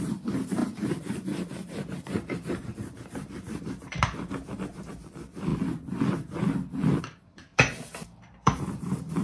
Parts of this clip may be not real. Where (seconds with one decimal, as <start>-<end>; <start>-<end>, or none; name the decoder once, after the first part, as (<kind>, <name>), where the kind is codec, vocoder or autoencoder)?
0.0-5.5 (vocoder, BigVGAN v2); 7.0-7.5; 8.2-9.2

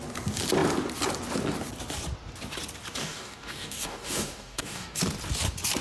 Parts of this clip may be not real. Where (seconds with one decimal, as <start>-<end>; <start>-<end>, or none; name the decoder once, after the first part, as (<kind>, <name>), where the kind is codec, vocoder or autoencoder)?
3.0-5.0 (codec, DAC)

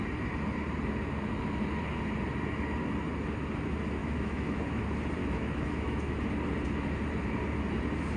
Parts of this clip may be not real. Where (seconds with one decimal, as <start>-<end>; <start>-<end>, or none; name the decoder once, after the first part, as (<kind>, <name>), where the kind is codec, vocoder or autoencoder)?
4.0-4.8 (autoencoder, DAC-VAE); 5.2-6.2